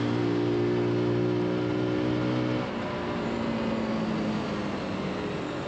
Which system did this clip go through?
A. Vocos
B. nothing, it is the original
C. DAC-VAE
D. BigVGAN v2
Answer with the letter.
B